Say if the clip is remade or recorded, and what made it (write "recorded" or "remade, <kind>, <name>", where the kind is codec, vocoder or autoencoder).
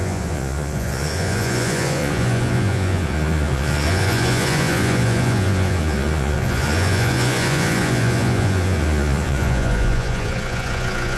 remade, vocoder, Vocos